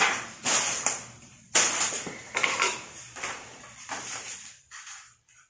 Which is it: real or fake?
fake